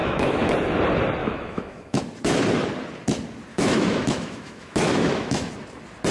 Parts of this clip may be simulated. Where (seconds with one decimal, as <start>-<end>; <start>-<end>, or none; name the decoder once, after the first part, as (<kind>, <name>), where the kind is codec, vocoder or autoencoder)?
0.0-0.5 (autoencoder, DAC-VAE); 1.2-2.0; 3.5-5.5